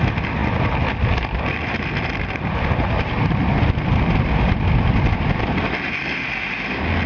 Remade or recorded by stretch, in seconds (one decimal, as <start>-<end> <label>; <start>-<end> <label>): 0.0-7.1 recorded